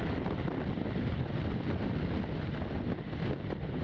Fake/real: real